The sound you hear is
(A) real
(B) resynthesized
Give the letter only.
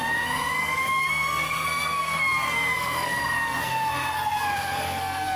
B